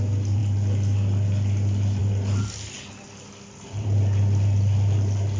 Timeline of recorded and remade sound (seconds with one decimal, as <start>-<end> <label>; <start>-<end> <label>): 0.0-5.4 recorded